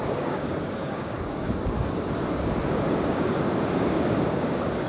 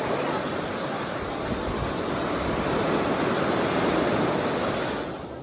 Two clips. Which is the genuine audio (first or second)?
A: second